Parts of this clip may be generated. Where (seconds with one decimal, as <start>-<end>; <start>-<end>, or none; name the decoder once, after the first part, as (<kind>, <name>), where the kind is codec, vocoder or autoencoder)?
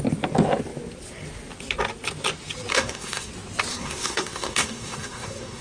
2.7-3.3 (codec, SNAC); 3.7-5.6